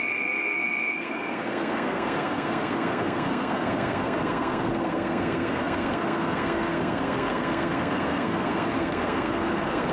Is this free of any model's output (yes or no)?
no